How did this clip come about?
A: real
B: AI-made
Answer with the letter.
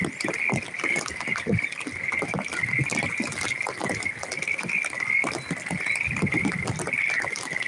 A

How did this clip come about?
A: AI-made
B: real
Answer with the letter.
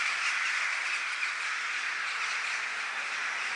B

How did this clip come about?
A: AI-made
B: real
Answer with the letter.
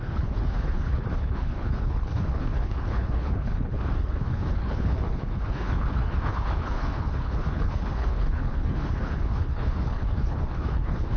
A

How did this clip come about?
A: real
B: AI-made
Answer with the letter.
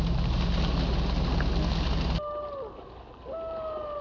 A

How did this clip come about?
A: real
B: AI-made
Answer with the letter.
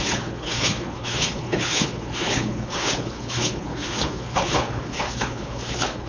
B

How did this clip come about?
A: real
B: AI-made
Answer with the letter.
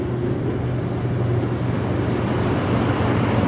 A